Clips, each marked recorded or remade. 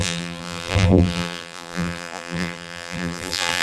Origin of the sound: remade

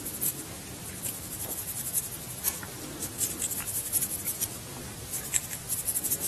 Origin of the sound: recorded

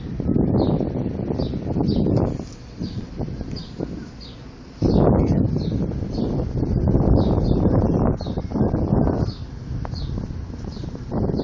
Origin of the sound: remade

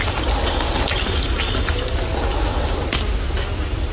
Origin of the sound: recorded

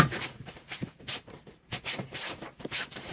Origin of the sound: remade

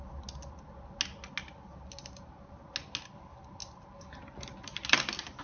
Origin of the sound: recorded